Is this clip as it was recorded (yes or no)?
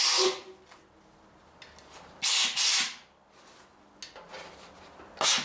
yes